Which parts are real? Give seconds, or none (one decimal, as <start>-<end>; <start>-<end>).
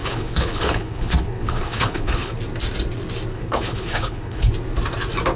2.3-3.3; 4.5-5.4